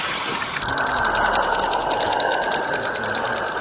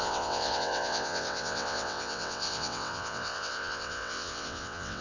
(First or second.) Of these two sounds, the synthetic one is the second